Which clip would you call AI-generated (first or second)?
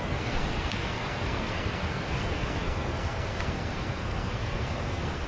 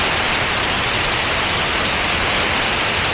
first